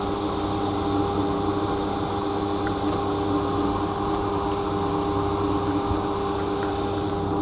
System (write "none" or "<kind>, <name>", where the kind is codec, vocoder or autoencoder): none